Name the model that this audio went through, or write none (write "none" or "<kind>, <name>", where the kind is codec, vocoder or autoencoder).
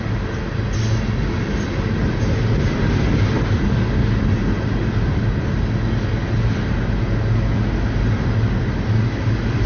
none